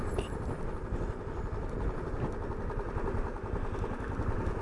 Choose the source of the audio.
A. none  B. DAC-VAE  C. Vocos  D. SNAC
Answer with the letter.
A